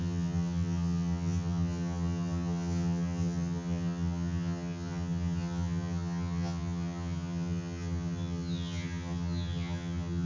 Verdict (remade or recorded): remade